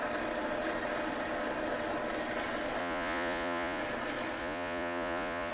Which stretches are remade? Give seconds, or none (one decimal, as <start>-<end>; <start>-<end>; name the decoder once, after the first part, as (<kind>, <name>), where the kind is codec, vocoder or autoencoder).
2.8-3.8 (vocoder, Vocos); 4.4-5.5